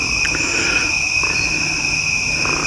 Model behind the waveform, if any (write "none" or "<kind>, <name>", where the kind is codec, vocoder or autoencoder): none